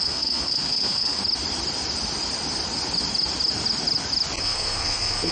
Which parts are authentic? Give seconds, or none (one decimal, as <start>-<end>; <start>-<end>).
1.2-4.4

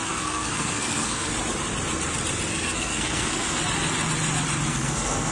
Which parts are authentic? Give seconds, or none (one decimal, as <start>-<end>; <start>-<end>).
1.3-2.5; 3.6-4.7

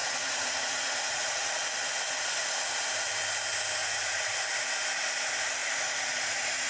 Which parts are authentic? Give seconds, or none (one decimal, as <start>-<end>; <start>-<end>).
1.5-3.8; 4.4-5.6